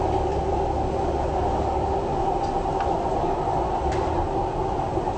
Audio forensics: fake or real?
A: real